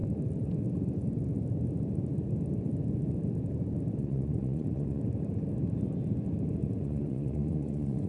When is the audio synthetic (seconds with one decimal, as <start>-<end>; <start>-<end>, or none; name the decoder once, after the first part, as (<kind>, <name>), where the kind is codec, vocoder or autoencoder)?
4.0-5.0 (vocoder, Vocos); 6.6-8.1